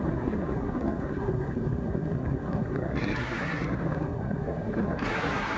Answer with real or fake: fake